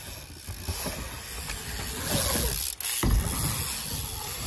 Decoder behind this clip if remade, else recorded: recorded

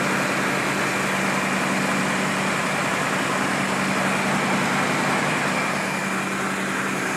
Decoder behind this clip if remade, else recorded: recorded